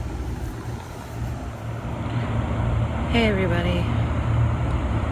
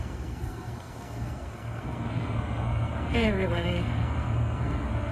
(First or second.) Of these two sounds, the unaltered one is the first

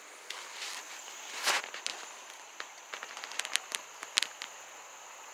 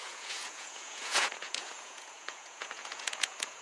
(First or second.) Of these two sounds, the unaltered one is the first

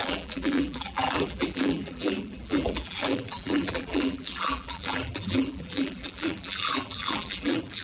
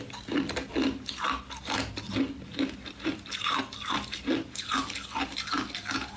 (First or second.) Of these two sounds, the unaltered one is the second